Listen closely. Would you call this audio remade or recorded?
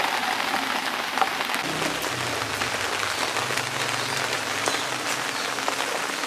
recorded